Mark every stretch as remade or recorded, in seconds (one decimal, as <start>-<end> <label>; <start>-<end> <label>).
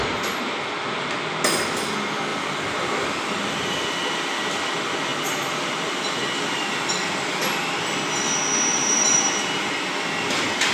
0.0-2.3 recorded; 2.3-4.5 remade; 4.5-5.1 recorded; 5.1-6.2 remade; 6.2-8.7 recorded; 8.7-9.7 remade; 9.7-10.7 recorded